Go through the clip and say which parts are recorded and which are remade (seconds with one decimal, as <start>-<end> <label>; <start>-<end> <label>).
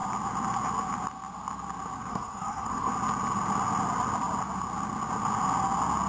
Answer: 0.0-2.1 recorded; 2.1-2.9 remade; 2.9-6.1 recorded